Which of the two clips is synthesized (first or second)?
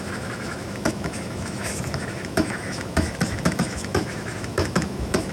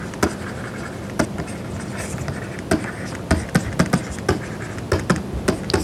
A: first